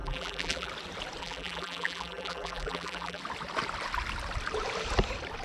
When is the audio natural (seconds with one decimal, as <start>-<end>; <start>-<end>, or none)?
0.7-1.2; 3.2-5.4